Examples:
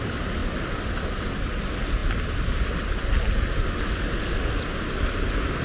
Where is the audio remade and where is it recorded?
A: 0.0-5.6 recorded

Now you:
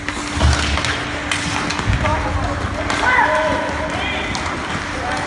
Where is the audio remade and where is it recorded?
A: 0.0-5.3 recorded

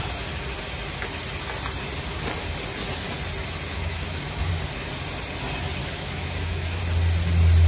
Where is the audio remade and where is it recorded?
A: 0.0-3.7 recorded; 3.7-4.5 remade; 4.5-5.8 recorded; 5.8-6.8 remade; 6.8-7.7 recorded

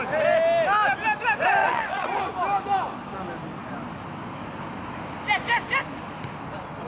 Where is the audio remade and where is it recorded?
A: 0.0-1.6 recorded; 1.6-2.2 remade; 2.2-6.9 recorded

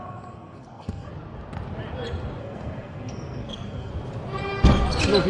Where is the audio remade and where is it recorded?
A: 0.0-1.1 remade; 1.1-2.4 recorded; 2.4-3.9 remade; 3.9-5.3 recorded

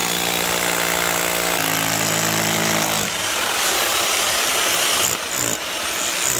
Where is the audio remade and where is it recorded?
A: 0.0-3.3 recorded; 3.3-3.9 remade; 3.9-6.4 recorded